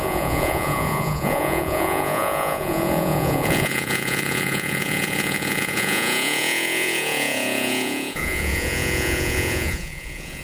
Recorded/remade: remade